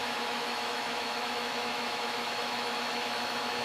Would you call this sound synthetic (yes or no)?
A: yes